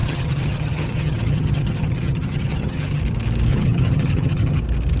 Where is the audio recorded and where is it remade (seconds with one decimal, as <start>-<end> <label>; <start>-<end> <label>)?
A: 0.0-3.0 remade; 3.0-3.5 recorded; 3.5-4.6 remade; 4.6-5.0 recorded